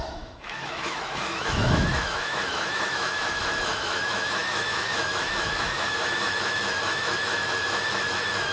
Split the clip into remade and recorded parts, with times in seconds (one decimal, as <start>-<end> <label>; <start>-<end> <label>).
0.0-8.5 remade